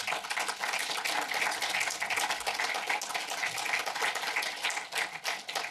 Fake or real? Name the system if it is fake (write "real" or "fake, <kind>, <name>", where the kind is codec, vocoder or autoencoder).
real